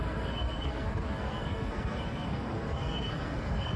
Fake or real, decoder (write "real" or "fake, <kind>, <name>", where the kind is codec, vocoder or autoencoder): fake, codec, SNAC